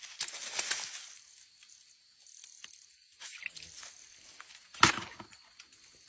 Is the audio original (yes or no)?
yes